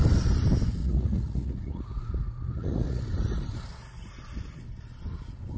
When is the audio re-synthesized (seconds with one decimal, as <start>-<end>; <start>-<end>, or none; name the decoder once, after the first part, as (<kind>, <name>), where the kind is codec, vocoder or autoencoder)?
0.8-3.1 (vocoder, Vocos)